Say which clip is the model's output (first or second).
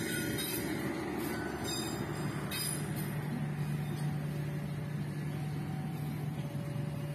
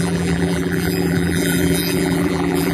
second